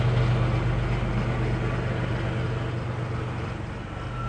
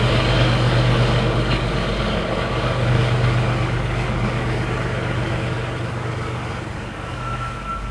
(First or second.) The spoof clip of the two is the second